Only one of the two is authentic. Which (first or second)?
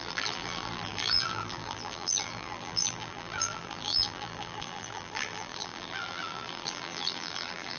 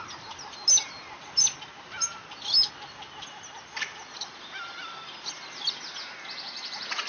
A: second